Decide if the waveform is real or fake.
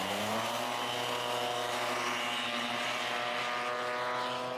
real